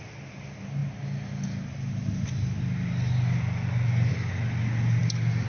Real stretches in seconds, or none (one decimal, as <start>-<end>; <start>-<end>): 0.0-5.5